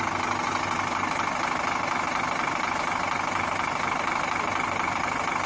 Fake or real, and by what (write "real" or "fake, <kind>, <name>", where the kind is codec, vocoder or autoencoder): real